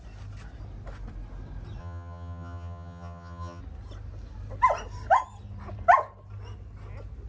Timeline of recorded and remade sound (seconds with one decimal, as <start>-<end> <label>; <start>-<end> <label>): 0.0-1.8 recorded; 1.8-3.6 remade; 3.6-7.3 recorded